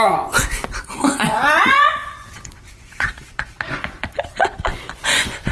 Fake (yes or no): yes